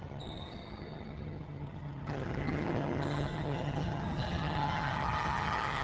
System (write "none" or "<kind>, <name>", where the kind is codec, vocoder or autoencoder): vocoder, HiFi-GAN